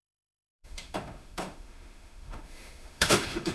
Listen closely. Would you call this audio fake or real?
fake